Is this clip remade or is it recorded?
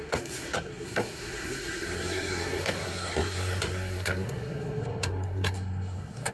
remade